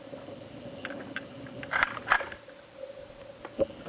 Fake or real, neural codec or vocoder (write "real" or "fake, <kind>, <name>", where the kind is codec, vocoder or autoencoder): real